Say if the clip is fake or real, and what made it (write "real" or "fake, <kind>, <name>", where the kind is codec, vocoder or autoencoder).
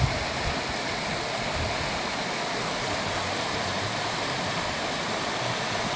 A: real